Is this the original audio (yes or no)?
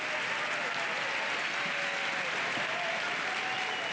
yes